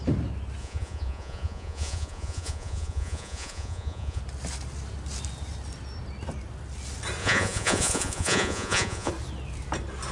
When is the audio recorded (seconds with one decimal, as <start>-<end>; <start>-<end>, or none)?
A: 0.0-0.6; 4.2-7.2; 9.1-10.1